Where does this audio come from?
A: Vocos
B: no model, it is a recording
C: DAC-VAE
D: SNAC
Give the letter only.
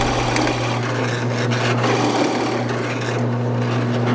B